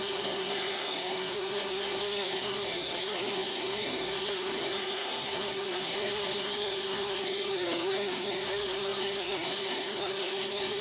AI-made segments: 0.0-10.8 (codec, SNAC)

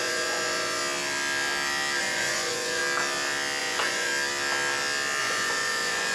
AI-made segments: 0.0-0.8 (vocoder, Vocos); 2.0-2.8; 3.6-4.1; 5.2-6.1

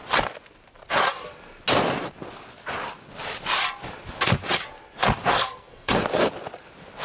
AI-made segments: 5.3-6.0 (codec, SNAC)